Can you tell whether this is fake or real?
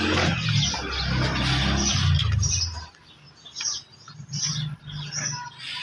real